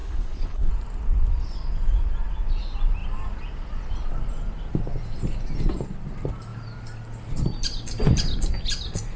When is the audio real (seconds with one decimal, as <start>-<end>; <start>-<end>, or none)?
0.7-9.2